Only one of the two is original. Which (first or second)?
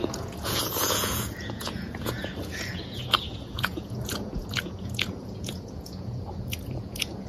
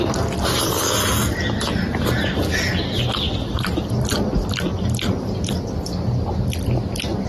second